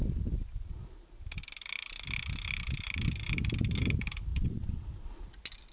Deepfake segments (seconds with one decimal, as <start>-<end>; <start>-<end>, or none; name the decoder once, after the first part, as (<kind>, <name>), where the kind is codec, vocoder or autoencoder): 4.3-5.1 (vocoder, WaveNeXt)